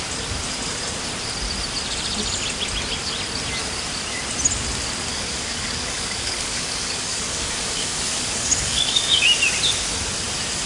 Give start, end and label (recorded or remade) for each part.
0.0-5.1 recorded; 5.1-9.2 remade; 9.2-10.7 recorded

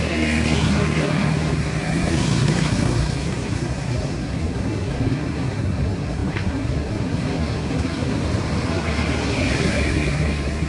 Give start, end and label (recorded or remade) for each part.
0.0-8.2 remade; 8.2-8.7 recorded; 8.7-10.7 remade

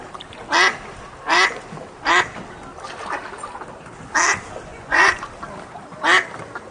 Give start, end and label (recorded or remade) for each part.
0.0-4.7 recorded; 4.7-5.3 remade; 5.3-6.7 recorded

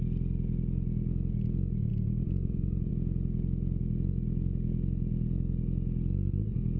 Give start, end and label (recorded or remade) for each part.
0.0-1.9 recorded; 1.9-2.9 remade; 2.9-6.8 recorded

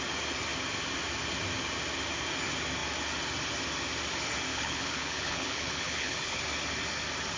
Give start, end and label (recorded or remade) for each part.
0.0-4.5 recorded; 4.5-6.4 remade; 6.4-7.4 recorded

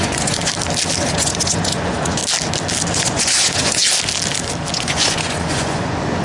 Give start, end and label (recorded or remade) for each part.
0.0-0.5 remade; 0.5-1.1 recorded; 1.1-2.2 remade; 2.2-3.0 recorded; 3.0-3.8 remade; 3.8-4.7 recorded; 4.7-6.2 remade

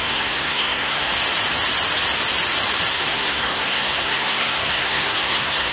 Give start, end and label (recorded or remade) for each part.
0.0-1.1 remade; 1.1-2.9 recorded; 2.9-5.7 remade

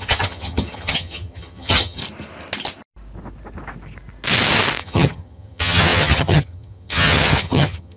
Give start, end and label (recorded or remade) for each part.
0.0-2.0 remade; 2.0-4.8 recorded; 4.8-8.0 remade